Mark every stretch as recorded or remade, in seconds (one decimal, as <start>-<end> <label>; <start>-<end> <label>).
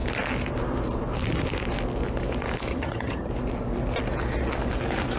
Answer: 0.0-2.7 recorded; 2.7-3.3 remade; 3.3-5.2 recorded